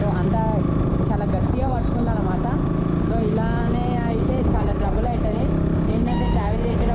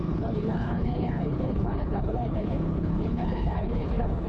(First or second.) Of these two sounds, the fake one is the second